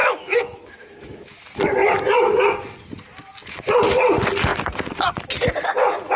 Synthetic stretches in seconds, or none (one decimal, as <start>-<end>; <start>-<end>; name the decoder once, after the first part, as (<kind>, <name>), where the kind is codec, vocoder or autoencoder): 0.0-1.3 (autoencoder, DAC-VAE)

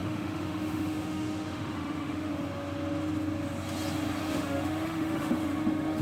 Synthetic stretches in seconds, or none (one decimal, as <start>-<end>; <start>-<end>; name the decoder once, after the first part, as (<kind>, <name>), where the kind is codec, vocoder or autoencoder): 0.0-2.3 (autoencoder, DAC-VAE); 4.2-6.0

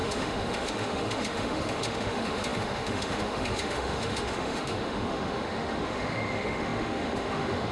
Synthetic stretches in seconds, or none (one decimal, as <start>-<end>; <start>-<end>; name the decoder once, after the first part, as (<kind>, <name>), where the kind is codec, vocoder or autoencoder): 0.0-7.7 (autoencoder, DAC-VAE)

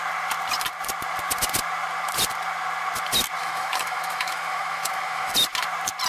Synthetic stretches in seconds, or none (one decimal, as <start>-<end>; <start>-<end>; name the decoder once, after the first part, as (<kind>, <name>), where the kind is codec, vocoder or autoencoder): 3.4-5.3 (autoencoder, DAC-VAE)

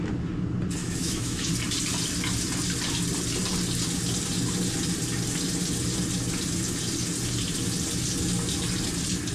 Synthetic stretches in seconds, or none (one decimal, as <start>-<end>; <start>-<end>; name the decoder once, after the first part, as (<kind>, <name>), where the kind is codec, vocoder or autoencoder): 0.8-1.5 (autoencoder, DAC-VAE)

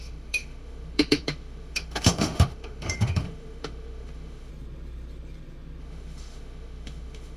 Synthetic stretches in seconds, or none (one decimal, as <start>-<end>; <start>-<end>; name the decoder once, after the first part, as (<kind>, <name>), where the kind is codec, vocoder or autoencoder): 0.0-4.5 (autoencoder, DAC-VAE); 5.8-7.4

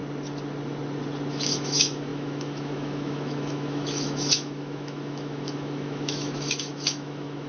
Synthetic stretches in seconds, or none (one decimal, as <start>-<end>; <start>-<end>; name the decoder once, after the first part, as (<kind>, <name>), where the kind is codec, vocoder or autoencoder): 1.3-7.5 (autoencoder, DAC-VAE)